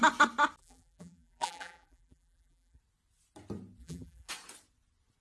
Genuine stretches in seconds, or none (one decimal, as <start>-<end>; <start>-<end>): 0.0-0.6; 2.8-3.8; 4.3-5.2